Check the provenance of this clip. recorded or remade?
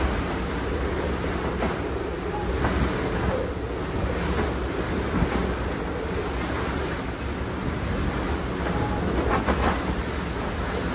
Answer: recorded